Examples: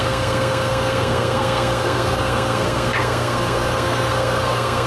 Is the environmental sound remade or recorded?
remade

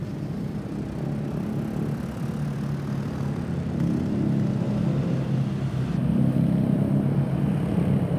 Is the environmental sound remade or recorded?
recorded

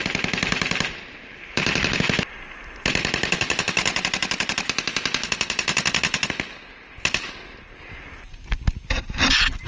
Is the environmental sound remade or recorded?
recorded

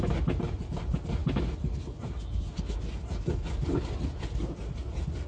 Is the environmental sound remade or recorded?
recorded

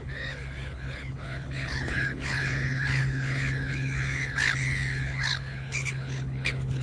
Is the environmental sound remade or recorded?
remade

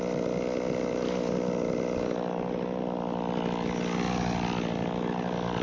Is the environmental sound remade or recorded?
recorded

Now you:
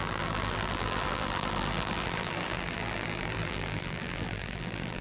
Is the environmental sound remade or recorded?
remade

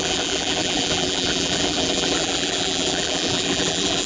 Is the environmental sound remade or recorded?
remade